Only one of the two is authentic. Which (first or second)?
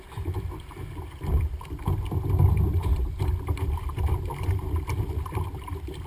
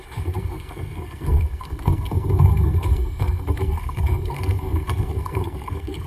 first